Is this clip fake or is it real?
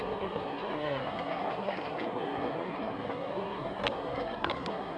fake